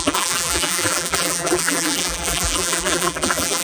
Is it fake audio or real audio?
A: fake